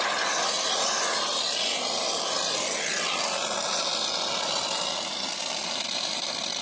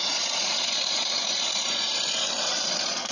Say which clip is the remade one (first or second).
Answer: second